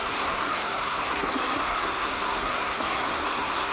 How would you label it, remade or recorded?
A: remade